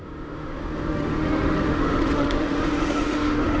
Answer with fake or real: fake